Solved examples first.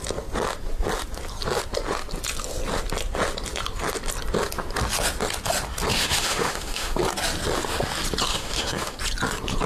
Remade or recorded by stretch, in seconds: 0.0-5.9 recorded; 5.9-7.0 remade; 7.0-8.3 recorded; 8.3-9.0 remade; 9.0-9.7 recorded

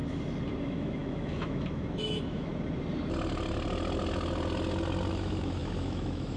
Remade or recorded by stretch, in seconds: 0.0-0.6 recorded; 0.6-2.5 remade; 2.5-5.1 recorded; 5.1-6.4 remade